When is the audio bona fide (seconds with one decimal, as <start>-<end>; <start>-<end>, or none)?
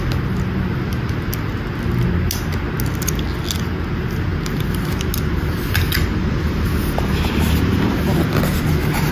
0.0-9.1